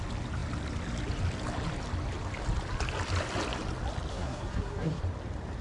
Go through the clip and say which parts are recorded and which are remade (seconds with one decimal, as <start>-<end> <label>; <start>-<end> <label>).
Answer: 0.0-4.1 recorded; 4.1-5.0 remade; 5.0-5.6 recorded